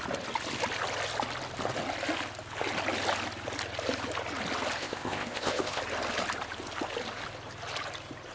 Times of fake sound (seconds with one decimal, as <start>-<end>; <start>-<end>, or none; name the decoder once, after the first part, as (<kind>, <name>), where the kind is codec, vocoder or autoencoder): 4.8-5.8 (codec, ZipCodec)